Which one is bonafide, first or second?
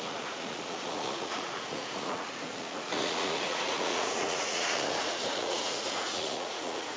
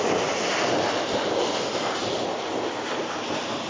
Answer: second